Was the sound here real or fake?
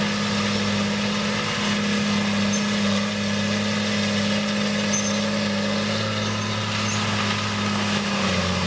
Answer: real